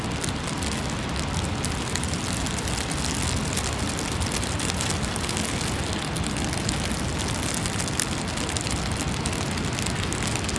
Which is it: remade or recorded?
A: recorded